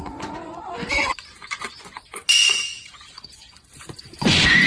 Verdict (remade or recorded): remade